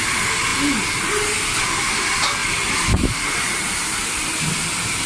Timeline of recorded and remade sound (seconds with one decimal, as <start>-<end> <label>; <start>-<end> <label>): 0.0-2.4 recorded; 2.4-4.5 remade; 4.5-5.1 recorded